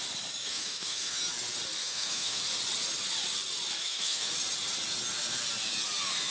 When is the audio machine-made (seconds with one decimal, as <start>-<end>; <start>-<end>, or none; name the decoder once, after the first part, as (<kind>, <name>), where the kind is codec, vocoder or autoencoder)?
0.4-1.2 (autoencoder, DAC-VAE); 1.8-2.4; 3.8-4.3